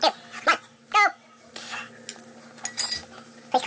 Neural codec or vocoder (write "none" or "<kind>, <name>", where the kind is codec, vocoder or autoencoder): none